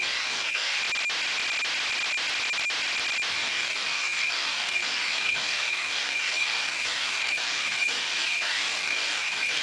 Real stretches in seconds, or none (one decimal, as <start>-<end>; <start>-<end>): 0.8-3.3